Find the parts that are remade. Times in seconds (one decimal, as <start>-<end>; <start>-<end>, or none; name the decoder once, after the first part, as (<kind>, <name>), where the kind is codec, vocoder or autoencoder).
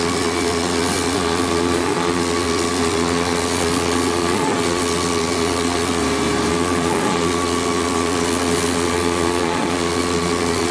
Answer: 0.0-6.0 (vocoder, Vocos); 6.5-10.7